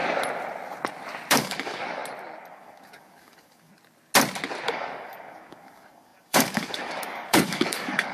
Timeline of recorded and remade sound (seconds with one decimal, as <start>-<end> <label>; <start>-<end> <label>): 0.0-1.3 recorded; 1.3-2.0 remade; 2.0-2.5 recorded; 2.5-3.7 remade; 3.7-4.7 recorded; 4.7-8.1 remade